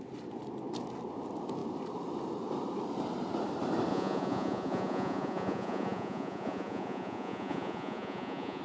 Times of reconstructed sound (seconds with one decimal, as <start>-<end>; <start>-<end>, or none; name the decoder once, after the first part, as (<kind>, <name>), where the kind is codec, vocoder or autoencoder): 3.9-8.6 (vocoder, Vocos)